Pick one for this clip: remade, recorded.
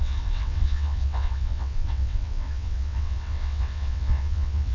remade